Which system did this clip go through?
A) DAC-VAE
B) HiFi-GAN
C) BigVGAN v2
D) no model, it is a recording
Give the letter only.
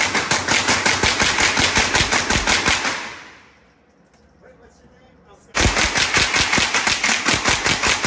D